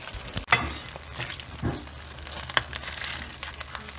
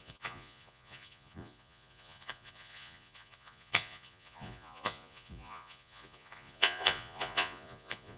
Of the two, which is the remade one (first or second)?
second